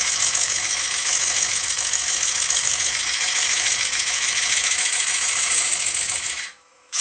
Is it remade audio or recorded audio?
remade